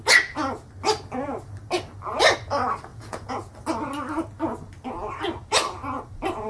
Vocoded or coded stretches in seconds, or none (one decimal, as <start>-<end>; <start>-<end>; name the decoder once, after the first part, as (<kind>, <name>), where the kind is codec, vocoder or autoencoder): 2.9-3.5 (vocoder, Vocos)